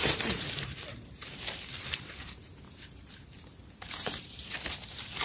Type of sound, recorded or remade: remade